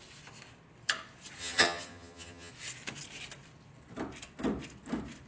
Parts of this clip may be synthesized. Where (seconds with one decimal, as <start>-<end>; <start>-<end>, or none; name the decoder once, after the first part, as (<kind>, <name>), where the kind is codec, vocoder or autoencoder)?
1.4-2.5 (vocoder, HiFi-GAN)